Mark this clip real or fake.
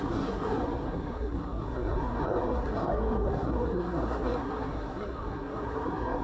fake